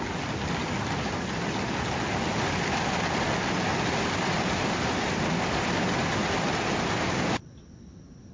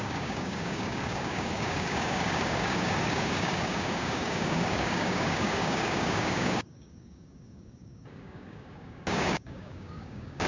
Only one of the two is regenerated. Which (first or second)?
second